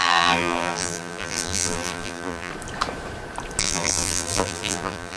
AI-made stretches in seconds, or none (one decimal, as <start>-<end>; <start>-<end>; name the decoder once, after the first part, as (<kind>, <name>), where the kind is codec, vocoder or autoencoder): 0.0-2.5 (vocoder, BigVGAN v2); 3.6-5.2